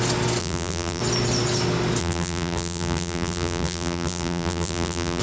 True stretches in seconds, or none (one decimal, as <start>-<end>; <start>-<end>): 0.0-0.4; 1.0-2.0